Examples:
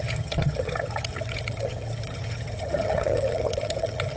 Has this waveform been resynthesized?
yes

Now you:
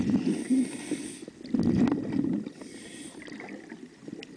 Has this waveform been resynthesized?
no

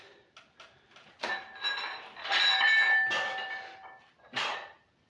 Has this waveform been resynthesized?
no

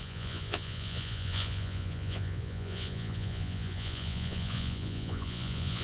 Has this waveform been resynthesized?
yes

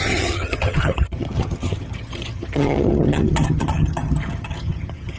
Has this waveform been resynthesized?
yes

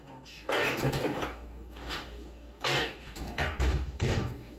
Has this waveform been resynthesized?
yes